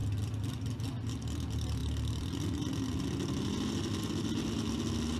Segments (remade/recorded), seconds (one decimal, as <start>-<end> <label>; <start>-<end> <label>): 0.0-1.8 recorded; 1.8-3.0 remade; 3.0-5.2 recorded